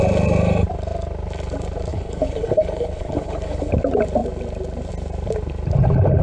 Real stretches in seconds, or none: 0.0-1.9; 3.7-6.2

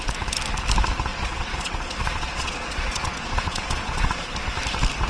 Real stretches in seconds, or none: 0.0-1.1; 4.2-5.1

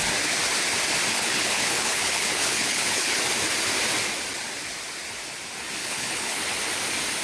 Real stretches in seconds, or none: 0.0-1.1; 3.2-5.8; 6.4-7.2

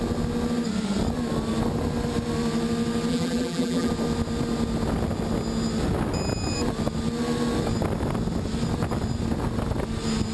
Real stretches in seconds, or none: 0.0-3.1; 3.9-10.3

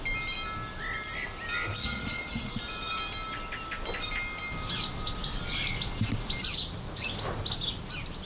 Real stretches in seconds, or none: 0.0-1.8; 2.5-8.2

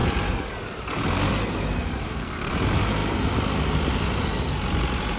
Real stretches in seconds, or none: 0.0-2.0; 2.5-5.2

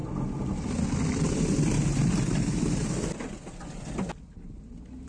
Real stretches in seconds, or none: 0.0-5.1

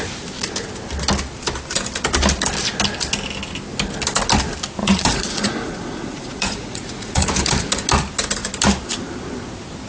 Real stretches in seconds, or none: 0.0-4.8; 7.3-9.9